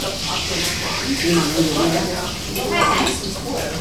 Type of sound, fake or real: real